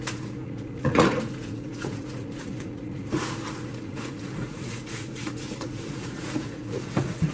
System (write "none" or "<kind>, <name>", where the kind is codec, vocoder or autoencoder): vocoder, Vocos